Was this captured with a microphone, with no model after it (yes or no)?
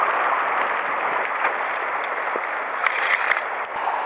yes